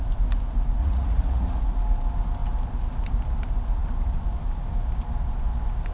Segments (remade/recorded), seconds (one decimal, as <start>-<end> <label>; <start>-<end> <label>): 0.0-0.8 recorded; 0.8-1.6 remade; 1.6-5.9 recorded